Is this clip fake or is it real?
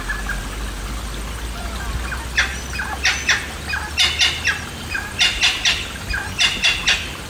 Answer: real